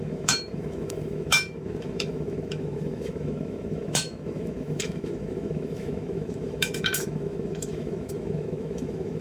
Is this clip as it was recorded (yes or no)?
no